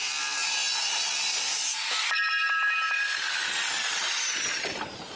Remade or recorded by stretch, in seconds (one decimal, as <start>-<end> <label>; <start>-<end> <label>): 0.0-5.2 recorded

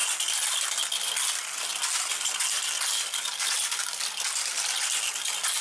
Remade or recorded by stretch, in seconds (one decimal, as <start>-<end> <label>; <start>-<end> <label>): 0.0-5.6 recorded

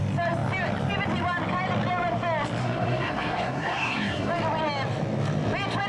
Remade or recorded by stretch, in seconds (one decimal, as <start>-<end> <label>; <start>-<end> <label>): 0.0-2.6 recorded; 2.6-4.3 remade; 4.3-5.9 recorded